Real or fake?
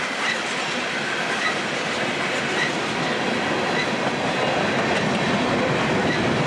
real